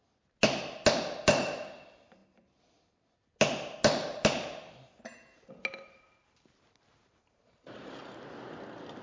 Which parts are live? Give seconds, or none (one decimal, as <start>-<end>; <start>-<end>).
0.0-7.4; 7.9-9.0